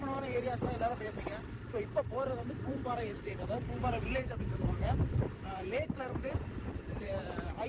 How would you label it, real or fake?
fake